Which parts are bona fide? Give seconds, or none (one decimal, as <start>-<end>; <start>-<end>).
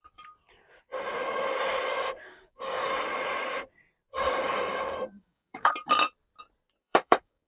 0.0-1.9; 2.9-4.1; 5.7-6.8